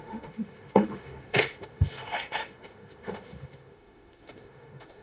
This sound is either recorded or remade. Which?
remade